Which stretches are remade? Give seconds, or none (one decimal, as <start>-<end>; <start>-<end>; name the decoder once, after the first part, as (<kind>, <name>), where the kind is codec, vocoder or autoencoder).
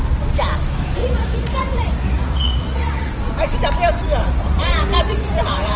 1.0-3.1 (vocoder, Vocos); 4.2-5.8